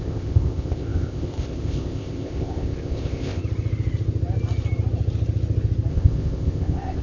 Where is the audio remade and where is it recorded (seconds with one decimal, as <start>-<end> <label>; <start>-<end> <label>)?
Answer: 0.0-3.4 remade; 3.4-5.9 recorded; 5.9-7.0 remade